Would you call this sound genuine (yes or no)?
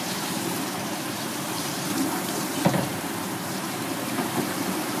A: no